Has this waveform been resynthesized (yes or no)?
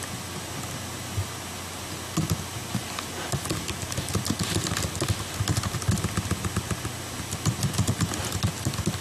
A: no